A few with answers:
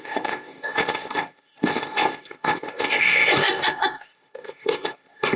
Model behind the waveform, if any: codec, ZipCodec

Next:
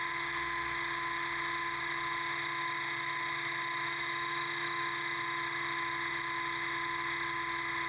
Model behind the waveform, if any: none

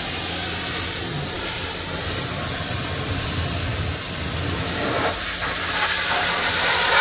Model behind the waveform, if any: none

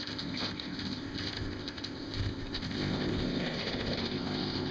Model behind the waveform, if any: codec, ZipCodec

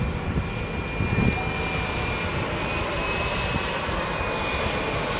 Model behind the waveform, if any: none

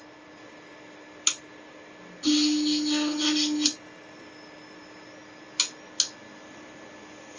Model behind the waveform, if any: none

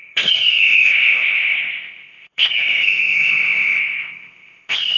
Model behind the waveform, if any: codec, ZipCodec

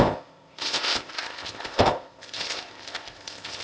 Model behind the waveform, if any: codec, ZipCodec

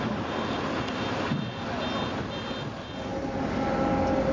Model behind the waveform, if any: none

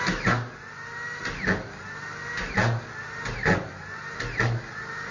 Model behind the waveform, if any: none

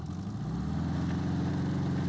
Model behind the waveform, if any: none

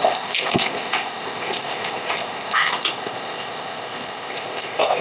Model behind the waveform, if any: codec, ZipCodec